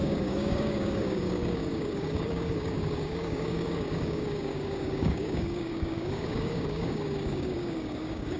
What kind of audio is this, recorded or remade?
remade